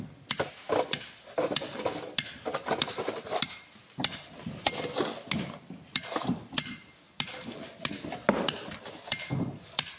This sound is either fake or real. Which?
real